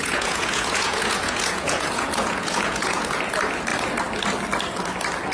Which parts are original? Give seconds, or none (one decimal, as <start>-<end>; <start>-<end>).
3.2-5.3

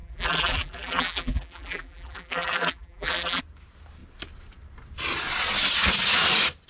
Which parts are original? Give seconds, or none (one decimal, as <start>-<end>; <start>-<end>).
3.4-6.7

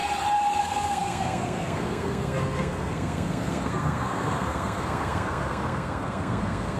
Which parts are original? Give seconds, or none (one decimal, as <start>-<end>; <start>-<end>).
0.0-0.6

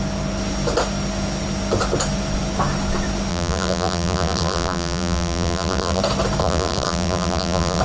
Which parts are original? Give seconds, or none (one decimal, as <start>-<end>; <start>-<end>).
0.0-3.3; 6.0-6.4

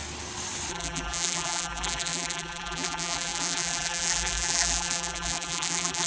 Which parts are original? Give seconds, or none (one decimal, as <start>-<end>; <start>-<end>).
0.0-0.7